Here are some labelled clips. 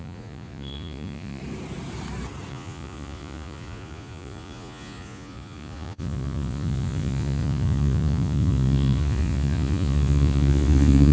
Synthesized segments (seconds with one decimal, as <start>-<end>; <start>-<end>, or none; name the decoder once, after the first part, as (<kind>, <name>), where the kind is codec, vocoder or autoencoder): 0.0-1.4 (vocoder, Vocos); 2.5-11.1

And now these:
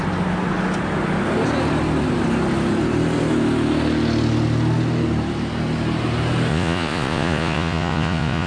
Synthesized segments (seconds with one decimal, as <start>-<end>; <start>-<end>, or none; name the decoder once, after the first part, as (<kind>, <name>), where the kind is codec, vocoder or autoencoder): 6.5-8.5 (vocoder, Vocos)

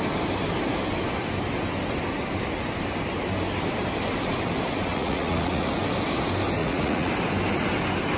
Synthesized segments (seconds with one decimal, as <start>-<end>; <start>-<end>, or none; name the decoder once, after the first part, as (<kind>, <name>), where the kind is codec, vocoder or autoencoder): 4.9-5.7 (vocoder, Vocos); 6.6-7.1

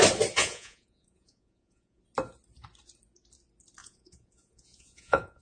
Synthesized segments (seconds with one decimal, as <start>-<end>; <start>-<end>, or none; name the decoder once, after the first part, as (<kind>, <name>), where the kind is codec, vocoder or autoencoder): 0.4-2.0 (vocoder, Vocos); 3.8-5.4